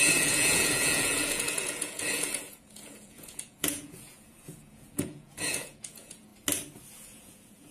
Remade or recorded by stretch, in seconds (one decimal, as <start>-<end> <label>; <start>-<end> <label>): 0.0-6.3 remade; 6.3-6.9 recorded; 6.9-7.7 remade